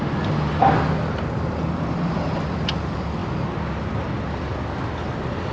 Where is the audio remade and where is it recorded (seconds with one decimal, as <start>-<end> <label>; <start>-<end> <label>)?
0.0-5.5 recorded